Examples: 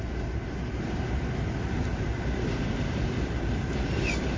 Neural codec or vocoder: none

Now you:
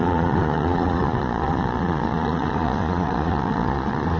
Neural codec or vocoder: vocoder, Vocos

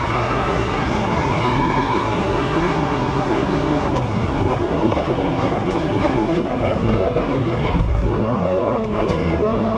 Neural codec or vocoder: codec, SNAC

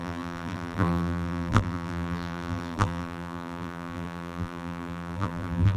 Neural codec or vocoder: vocoder, BigVGAN v2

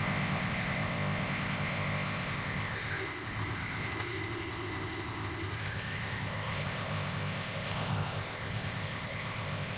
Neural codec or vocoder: codec, ZipCodec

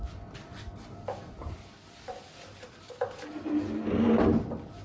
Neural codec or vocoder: none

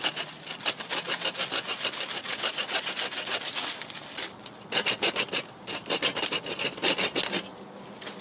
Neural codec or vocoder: none